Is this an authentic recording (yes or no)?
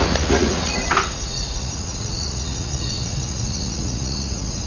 no